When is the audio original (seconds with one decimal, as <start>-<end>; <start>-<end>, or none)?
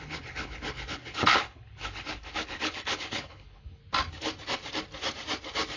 3.8-5.8